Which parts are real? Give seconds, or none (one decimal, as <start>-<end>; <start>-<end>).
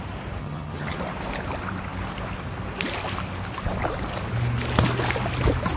0.0-0.4; 1.0-5.8